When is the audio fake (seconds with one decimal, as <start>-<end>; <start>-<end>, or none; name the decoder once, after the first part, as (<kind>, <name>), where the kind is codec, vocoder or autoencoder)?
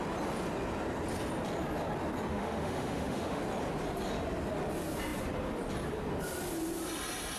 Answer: 2.3-3.4 (autoencoder, DAC-VAE)